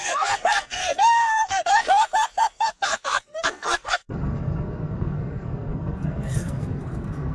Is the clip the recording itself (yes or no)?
no